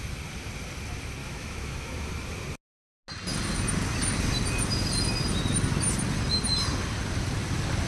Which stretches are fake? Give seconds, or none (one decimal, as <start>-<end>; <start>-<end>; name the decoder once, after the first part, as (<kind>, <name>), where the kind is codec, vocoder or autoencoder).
1.2-2.1 (autoencoder, DAC-VAE)